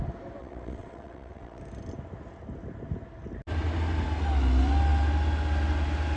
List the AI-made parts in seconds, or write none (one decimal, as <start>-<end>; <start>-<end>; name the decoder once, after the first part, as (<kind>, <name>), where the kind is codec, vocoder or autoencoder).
0.4-1.6 (vocoder, WaveNeXt)